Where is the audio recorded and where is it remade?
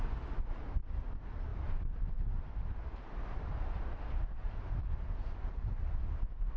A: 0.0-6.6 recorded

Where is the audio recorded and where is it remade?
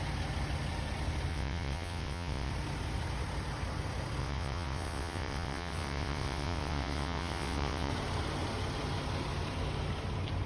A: 0.0-1.3 recorded; 1.3-2.5 remade; 2.5-4.2 recorded; 4.2-7.9 remade; 7.9-10.5 recorded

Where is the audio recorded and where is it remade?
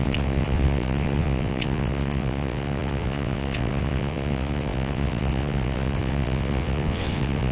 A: 0.0-7.5 remade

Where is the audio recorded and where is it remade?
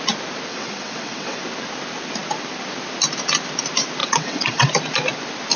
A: 0.0-0.5 recorded; 0.5-1.4 remade; 1.4-4.0 recorded; 4.0-4.7 remade; 4.7-5.6 recorded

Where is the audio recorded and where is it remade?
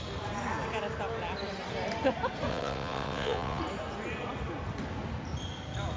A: 0.0-2.5 recorded; 2.5-3.6 remade; 3.6-6.0 recorded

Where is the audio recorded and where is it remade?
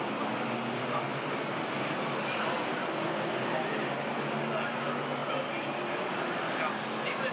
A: 0.0-7.3 recorded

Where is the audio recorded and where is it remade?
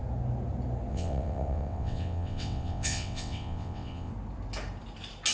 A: 0.0-0.9 recorded; 0.9-4.1 remade; 4.1-5.3 recorded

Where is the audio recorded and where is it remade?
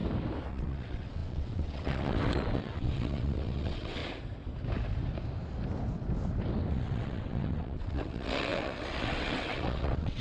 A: 0.0-0.5 recorded; 0.5-4.0 remade; 4.0-6.7 recorded; 6.7-10.2 remade